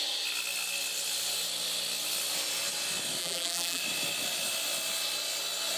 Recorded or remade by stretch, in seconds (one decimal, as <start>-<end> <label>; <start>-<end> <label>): 0.0-3.2 recorded; 3.2-3.8 remade; 3.8-5.8 recorded